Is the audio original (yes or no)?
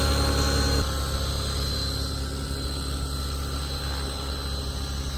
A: yes